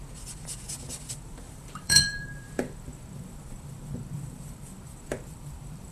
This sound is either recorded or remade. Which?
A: remade